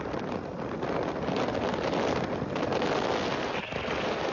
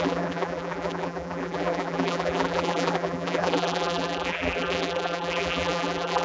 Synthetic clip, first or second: second